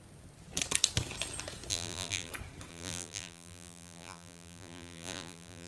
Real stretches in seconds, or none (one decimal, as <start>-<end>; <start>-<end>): 0.0-1.7; 2.3-2.7